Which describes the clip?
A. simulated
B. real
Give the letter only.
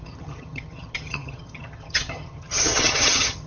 A